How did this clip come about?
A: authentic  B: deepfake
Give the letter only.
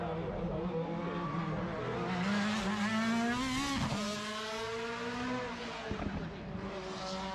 A